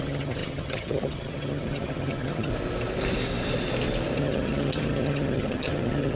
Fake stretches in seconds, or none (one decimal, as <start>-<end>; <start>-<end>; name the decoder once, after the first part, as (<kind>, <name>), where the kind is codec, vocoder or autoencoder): 0.0-2.5 (vocoder, HiFi-GAN); 4.2-6.2